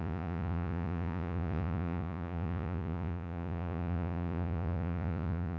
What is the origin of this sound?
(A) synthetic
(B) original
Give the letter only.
A